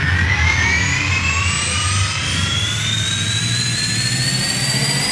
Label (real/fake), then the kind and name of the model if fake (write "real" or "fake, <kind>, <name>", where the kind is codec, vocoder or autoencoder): real